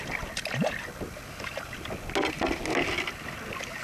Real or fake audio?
real